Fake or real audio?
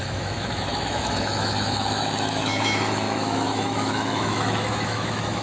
fake